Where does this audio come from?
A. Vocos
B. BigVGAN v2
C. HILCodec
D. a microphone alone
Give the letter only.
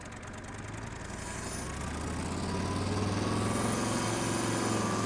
D